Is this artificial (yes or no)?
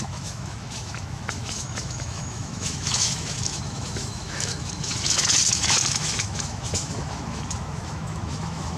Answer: yes